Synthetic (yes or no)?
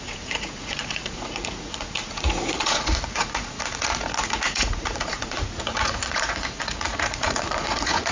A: yes